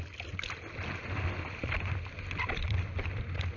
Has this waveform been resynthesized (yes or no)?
no